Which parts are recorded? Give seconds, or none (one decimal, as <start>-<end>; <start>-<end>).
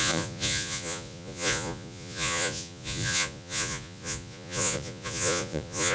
none